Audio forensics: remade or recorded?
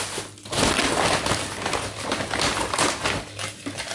recorded